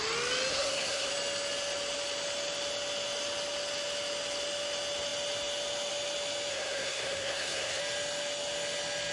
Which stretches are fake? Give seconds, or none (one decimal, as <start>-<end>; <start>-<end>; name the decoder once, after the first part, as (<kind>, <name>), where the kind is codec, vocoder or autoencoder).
0.5-1.1 (codec, SNAC); 6.5-7.8